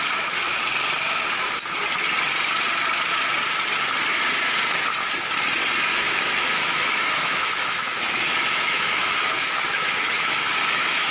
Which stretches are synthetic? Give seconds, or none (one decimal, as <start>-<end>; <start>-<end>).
5.9-11.1